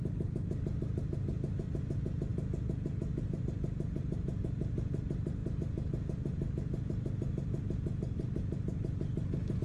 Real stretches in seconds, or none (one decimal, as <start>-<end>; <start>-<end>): 0.0-9.6